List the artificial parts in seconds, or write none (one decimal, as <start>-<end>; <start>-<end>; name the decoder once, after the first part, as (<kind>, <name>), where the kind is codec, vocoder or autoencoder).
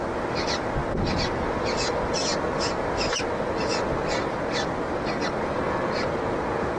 none